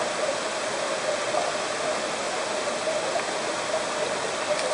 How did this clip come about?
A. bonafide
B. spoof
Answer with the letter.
A